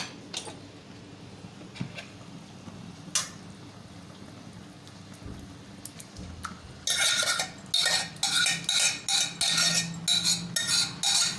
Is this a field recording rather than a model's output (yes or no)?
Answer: yes